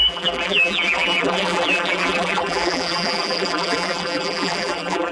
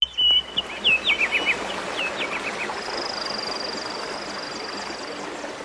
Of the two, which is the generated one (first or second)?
first